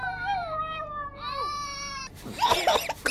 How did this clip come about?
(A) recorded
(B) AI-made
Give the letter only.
B